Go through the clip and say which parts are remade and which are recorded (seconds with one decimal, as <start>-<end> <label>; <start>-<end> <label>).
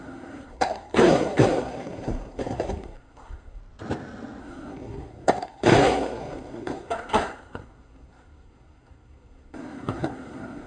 0.0-3.6 remade; 3.6-4.4 recorded; 4.4-10.7 remade